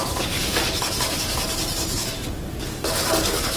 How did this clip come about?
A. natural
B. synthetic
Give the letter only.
B